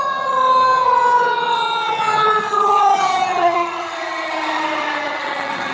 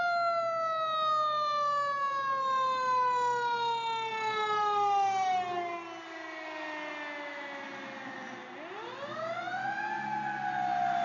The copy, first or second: first